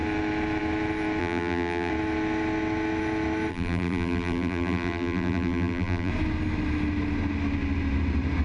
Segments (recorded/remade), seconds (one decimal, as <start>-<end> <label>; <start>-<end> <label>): 0.0-1.2 recorded; 1.2-1.9 remade; 1.9-3.5 recorded; 3.5-6.1 remade; 6.1-8.4 recorded